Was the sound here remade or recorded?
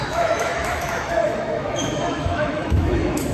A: remade